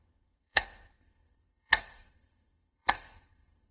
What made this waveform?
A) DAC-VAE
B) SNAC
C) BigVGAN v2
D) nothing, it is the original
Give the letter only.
B